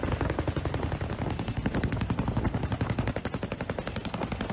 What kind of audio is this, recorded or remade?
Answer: recorded